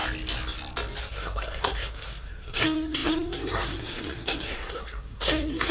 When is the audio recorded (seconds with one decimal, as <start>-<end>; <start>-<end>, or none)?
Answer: 0.0-1.0